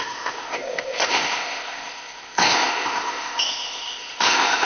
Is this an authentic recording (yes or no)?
no